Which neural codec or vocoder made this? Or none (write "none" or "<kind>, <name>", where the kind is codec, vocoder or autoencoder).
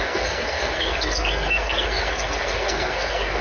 codec, SNAC